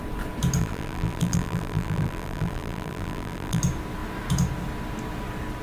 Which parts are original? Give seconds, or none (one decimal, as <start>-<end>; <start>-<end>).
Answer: 0.0-0.6; 3.6-5.6